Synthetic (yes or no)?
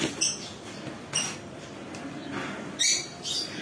no